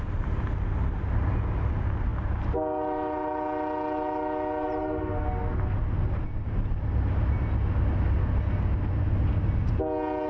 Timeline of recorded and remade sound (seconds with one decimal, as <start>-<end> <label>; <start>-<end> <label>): 0.0-10.3 recorded